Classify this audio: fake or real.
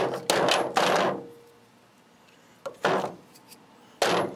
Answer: real